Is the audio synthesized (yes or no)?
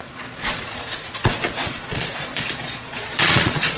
yes